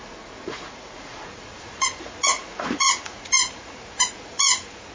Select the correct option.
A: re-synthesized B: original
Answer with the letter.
A